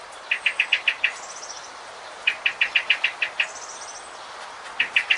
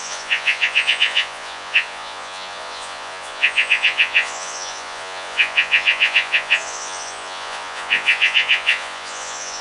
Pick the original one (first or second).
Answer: first